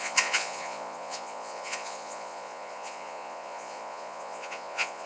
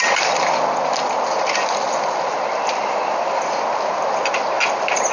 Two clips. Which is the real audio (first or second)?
second